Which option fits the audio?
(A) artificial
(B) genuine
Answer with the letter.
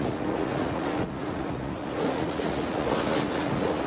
A